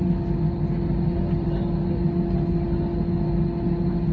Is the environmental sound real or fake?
real